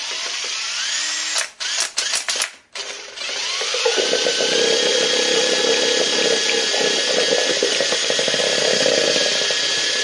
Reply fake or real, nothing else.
real